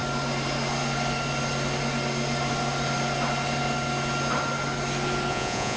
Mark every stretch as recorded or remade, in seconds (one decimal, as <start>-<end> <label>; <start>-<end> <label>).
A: 0.0-5.3 recorded; 5.3-5.8 remade